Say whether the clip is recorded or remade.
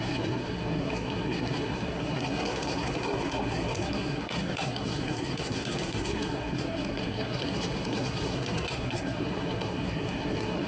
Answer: remade